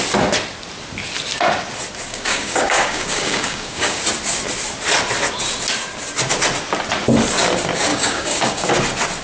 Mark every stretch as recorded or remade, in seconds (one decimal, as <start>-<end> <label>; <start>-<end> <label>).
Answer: 0.0-2.1 recorded; 2.1-4.0 remade; 4.0-7.9 recorded; 7.9-8.7 remade; 8.7-9.2 recorded